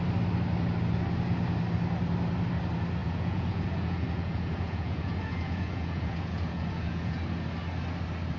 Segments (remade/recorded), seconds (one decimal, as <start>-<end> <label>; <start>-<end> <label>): 0.0-3.0 recorded; 3.0-7.2 remade; 7.2-8.4 recorded